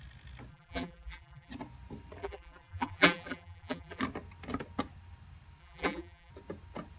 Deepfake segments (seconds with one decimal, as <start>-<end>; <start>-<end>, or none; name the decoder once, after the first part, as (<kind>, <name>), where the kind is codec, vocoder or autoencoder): 0.5-1.5 (vocoder, BigVGAN v2); 2.2-4.0; 5.6-6.3